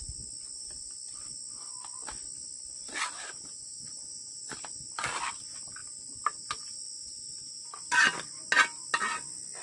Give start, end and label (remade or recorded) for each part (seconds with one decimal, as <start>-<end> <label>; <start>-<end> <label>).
0.0-9.6 recorded